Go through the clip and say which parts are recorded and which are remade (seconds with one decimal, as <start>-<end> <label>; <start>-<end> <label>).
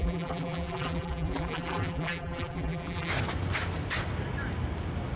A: 0.0-3.1 remade; 3.1-5.2 recorded